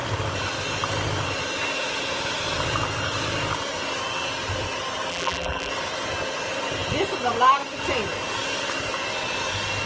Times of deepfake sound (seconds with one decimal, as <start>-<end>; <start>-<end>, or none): 5.1-5.7